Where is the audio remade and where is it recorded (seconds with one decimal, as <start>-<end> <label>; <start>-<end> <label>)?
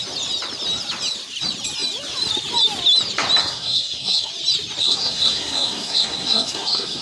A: 0.0-3.4 recorded; 3.4-4.3 remade; 4.3-4.8 recorded; 4.8-7.0 remade